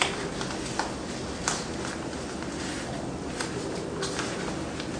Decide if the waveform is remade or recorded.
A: recorded